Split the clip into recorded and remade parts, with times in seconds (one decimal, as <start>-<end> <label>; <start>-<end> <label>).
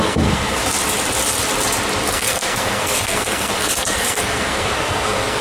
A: 0.0-0.6 remade; 0.6-2.1 recorded; 2.1-5.4 remade